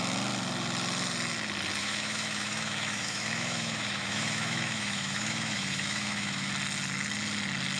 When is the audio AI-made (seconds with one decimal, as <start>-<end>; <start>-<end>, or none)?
1.8-6.5